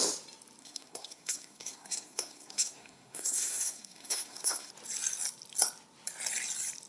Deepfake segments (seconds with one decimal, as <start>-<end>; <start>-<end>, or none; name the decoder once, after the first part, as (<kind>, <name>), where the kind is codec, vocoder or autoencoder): 0.6-4.7 (codec, SNAC)